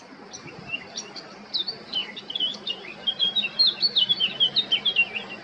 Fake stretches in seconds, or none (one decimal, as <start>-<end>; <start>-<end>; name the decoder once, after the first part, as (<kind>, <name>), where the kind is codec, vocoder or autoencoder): 0.0-5.4 (vocoder, BigVGAN v2)